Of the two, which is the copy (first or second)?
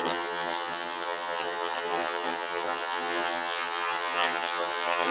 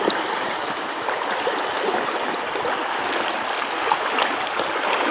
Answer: first